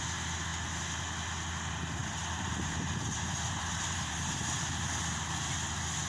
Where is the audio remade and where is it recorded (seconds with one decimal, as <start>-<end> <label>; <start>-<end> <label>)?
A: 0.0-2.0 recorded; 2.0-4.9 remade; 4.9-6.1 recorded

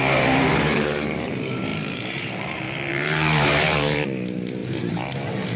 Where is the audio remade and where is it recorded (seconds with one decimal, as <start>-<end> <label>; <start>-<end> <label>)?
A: 0.0-5.6 remade

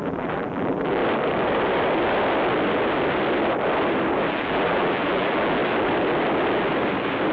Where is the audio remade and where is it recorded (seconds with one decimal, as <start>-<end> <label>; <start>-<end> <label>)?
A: 0.0-1.0 remade; 1.0-4.3 recorded; 4.3-5.6 remade; 5.6-7.3 recorded